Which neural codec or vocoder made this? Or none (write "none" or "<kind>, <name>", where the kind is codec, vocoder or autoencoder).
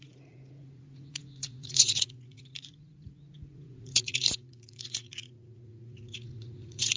vocoder, Vocos